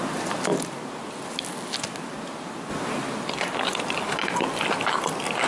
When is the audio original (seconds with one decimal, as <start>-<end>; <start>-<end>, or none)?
0.0-5.5